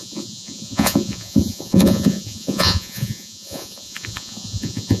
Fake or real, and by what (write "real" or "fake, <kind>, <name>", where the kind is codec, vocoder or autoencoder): fake, vocoder, Vocos